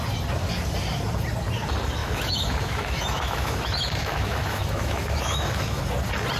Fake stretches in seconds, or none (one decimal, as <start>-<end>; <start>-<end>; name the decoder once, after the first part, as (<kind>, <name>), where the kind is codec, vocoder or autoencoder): 2.0-5.8 (autoencoder, DAC-VAE)

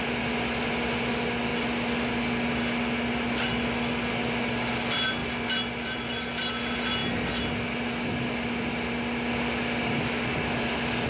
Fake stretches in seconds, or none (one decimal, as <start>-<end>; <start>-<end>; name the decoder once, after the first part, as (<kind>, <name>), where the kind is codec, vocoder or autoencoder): 5.2-6.1 (vocoder, BigVGAN v2)